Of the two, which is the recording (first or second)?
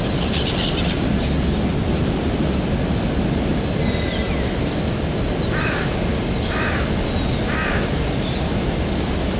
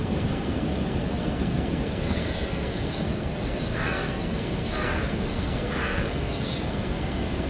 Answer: first